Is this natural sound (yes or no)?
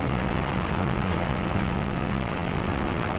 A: no